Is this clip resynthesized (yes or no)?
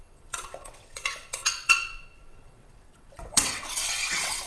yes